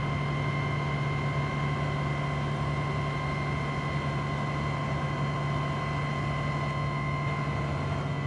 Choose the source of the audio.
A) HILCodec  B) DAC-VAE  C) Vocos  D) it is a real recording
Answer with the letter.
D